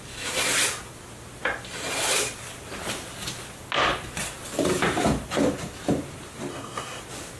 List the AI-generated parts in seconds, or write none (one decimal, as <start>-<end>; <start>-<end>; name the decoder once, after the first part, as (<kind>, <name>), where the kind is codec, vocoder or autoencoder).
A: 6.5-7.0 (codec, DAC)